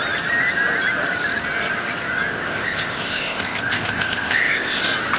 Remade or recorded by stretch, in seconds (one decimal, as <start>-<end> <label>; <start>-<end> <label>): 0.0-2.3 recorded; 2.3-4.8 remade; 4.8-5.2 recorded